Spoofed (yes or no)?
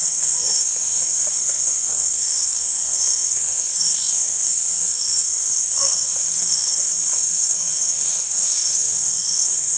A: yes